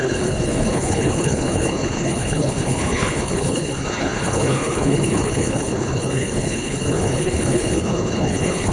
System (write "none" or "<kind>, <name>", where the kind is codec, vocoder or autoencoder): codec, HILCodec